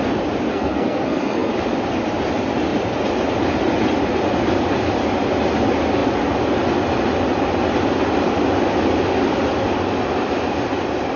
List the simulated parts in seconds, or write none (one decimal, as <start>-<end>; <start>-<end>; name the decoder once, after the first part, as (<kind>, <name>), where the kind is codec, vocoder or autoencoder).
0.5-1.5 (codec, SNAC)